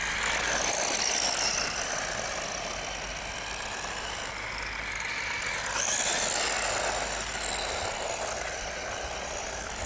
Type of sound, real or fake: real